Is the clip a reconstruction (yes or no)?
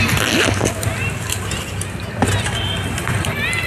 no